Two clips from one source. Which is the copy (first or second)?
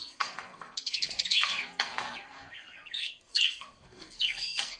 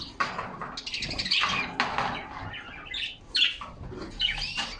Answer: first